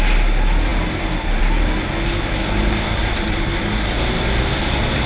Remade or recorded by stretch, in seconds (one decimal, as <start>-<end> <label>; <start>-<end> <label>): 0.0-5.1 recorded